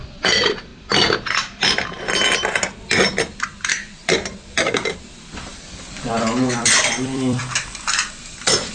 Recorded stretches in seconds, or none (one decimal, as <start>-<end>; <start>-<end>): 0.7-5.7; 7.4-8.7